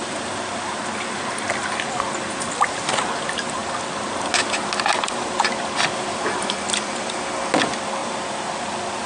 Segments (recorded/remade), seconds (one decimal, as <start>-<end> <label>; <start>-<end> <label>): 0.0-0.8 remade; 0.8-8.0 recorded; 8.0-8.5 remade; 8.5-9.1 recorded